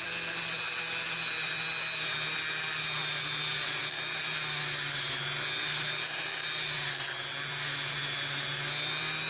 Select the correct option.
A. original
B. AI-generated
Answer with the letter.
A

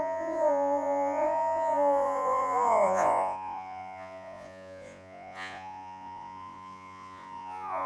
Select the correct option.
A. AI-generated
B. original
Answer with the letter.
A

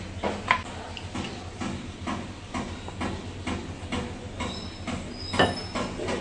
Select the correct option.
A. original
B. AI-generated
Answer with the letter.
A